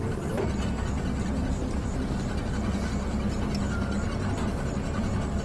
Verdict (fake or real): real